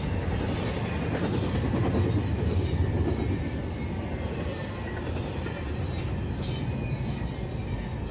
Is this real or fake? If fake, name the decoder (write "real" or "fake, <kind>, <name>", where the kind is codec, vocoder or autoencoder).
real